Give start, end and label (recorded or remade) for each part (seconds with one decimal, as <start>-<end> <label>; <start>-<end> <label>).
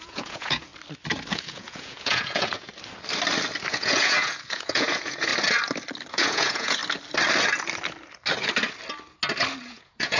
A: 0.0-0.7 remade; 0.7-1.3 recorded; 1.3-2.7 remade; 2.7-3.7 recorded; 3.7-5.3 remade; 5.3-6.1 recorded; 6.1-6.8 remade; 6.8-9.7 recorded; 9.7-10.2 remade